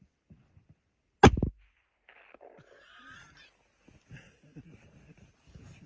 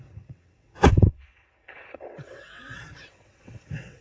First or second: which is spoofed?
second